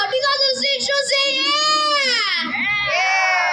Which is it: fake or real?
real